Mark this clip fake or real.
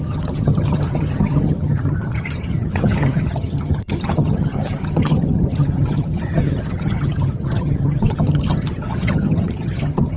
fake